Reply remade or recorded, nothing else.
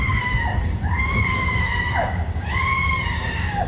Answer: remade